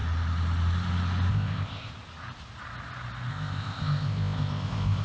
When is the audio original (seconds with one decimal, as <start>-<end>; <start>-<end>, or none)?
0.0-1.3; 1.9-3.3